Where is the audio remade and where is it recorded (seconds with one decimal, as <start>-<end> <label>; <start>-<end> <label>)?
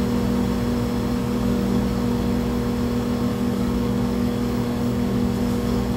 0.0-1.2 recorded; 1.2-1.8 remade; 1.8-3.3 recorded; 3.3-6.0 remade